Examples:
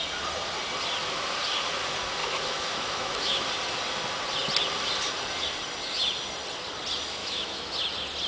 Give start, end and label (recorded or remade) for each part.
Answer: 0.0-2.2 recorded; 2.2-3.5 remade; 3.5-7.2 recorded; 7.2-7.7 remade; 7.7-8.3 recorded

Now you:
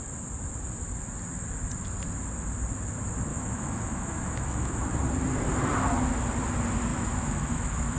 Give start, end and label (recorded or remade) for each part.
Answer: 0.0-3.3 recorded; 3.3-4.8 remade; 4.8-6.9 recorded; 6.9-8.0 remade